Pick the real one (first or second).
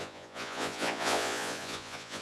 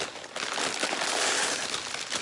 second